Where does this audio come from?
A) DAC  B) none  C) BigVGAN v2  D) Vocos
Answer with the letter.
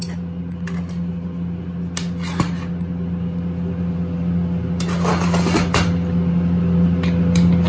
B